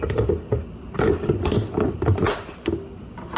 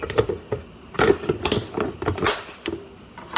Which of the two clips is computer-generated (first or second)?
second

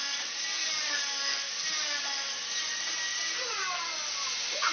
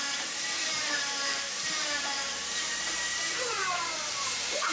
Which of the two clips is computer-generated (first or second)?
second